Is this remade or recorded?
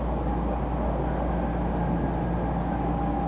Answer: recorded